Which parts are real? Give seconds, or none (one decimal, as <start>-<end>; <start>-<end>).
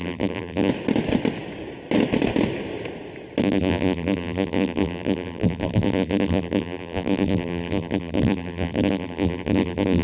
0.7-3.4